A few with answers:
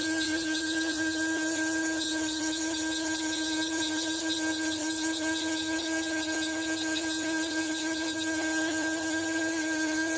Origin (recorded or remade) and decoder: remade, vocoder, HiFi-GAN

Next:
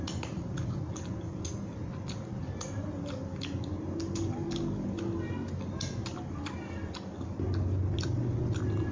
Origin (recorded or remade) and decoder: recorded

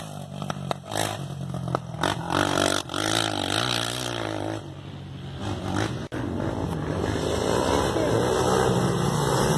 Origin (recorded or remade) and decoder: recorded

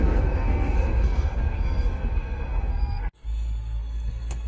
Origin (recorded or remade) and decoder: remade, codec, SNAC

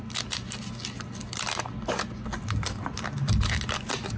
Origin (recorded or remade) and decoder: recorded